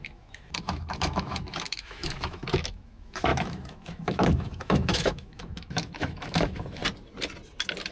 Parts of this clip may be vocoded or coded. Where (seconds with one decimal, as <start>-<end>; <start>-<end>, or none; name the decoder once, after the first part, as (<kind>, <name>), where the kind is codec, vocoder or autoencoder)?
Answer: 0.0-6.8 (autoencoder, DAC-VAE)